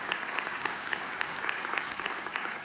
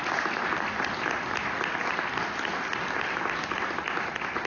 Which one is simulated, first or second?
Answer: first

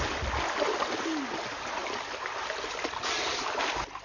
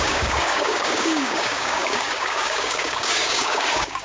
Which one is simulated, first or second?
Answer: second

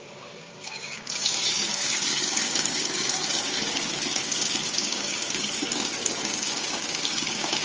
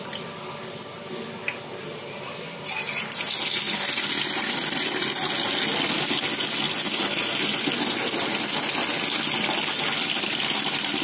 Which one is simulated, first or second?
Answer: first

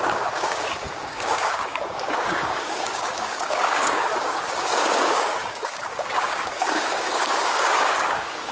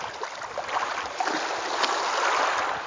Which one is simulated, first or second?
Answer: first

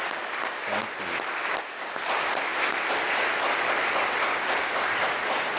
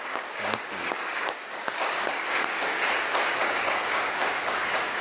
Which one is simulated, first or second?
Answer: second